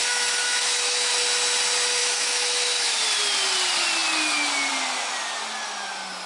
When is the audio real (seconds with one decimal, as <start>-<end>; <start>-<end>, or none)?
1.1-2.0; 3.0-6.3